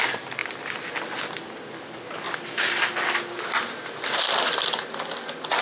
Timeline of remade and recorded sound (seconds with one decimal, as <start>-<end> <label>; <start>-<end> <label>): 0.0-5.6 recorded